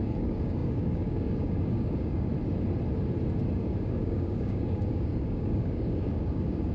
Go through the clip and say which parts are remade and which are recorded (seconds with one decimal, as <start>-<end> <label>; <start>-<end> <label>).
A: 0.0-2.3 remade; 2.3-3.6 recorded; 3.6-6.7 remade